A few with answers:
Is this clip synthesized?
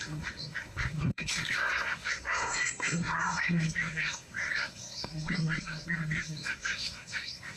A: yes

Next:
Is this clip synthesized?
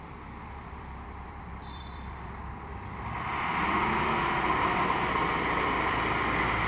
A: yes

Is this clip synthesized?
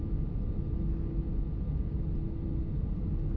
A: no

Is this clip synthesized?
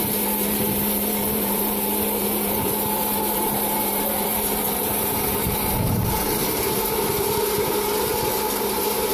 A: yes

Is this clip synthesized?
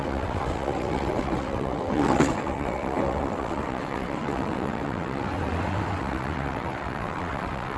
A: yes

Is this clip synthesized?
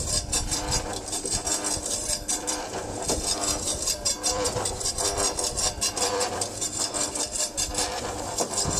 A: yes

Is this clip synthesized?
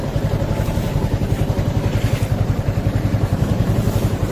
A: yes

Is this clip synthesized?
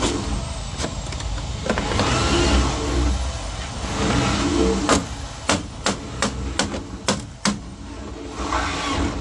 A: no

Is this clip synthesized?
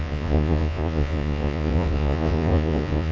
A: yes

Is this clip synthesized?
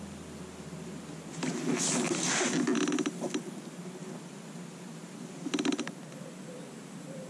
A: no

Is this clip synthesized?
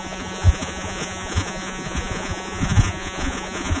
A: yes